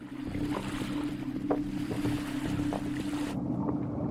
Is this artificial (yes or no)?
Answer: no